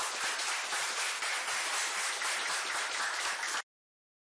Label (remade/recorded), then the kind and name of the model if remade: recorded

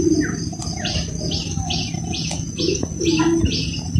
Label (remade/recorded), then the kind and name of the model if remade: recorded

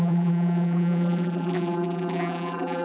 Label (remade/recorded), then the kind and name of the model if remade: remade, vocoder, BigVGAN v2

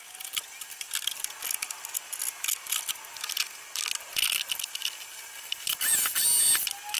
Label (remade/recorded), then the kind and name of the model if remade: recorded